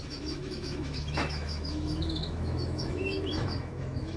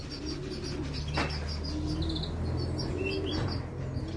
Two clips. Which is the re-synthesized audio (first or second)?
first